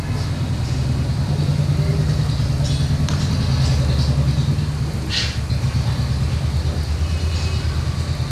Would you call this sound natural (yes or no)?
yes